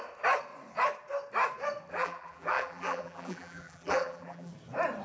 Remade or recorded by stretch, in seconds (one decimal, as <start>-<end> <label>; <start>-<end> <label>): 0.0-1.9 recorded; 1.9-4.5 remade; 4.5-5.0 recorded